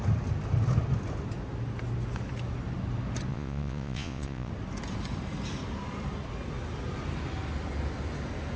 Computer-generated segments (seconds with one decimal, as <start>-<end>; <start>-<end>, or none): 3.3-4.5